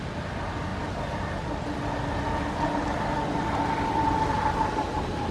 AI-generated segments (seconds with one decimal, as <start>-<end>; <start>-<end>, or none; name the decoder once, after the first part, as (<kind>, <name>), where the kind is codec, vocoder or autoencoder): none